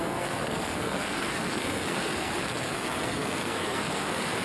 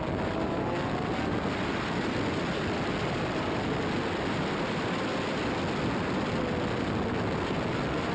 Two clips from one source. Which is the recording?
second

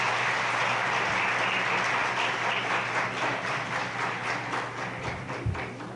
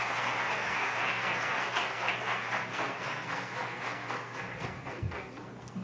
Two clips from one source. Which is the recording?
first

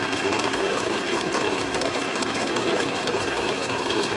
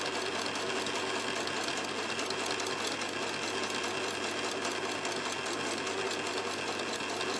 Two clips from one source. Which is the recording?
second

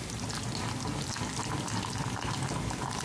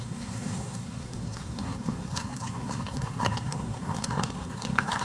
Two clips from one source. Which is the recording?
first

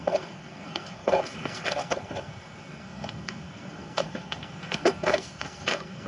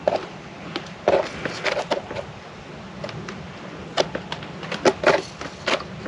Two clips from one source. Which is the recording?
second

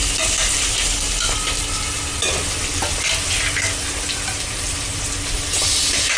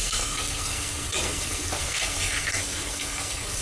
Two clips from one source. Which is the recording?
first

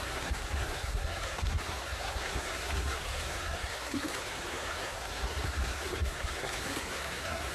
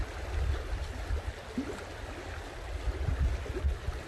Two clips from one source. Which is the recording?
second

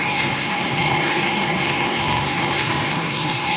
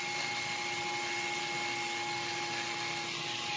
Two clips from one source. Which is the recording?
second